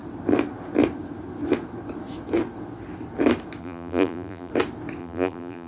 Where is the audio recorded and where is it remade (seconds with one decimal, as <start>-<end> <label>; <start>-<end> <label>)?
0.0-3.6 recorded; 3.6-4.5 remade; 4.5-5.0 recorded; 5.0-5.7 remade